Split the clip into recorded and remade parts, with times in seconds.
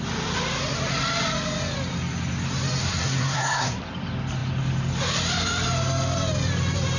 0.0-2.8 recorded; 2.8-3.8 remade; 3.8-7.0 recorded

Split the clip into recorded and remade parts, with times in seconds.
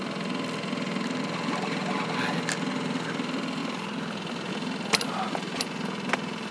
0.0-6.5 recorded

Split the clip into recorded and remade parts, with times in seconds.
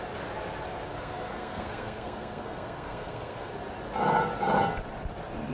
0.0-0.9 recorded; 0.9-3.5 remade; 3.5-5.5 recorded